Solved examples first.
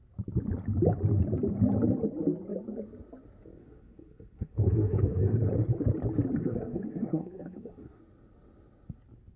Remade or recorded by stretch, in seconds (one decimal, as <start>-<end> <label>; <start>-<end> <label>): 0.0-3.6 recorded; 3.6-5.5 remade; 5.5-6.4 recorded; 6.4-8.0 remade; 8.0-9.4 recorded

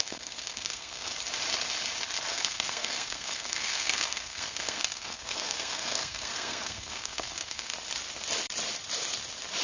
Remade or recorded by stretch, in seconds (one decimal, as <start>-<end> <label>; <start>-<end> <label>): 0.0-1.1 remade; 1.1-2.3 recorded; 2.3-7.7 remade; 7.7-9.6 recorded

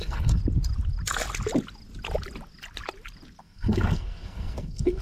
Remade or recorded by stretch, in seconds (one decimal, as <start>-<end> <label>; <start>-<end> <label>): 0.0-0.4 remade; 0.4-3.4 recorded; 3.4-5.0 remade

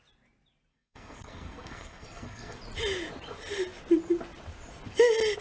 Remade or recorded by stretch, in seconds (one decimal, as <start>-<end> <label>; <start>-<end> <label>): 0.0-0.7 recorded; 0.7-2.6 remade; 2.6-5.4 recorded

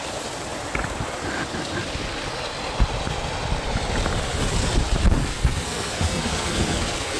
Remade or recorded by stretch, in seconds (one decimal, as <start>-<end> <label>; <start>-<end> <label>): 0.0-5.2 recorded; 5.2-7.2 remade